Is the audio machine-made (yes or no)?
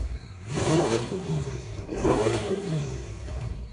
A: yes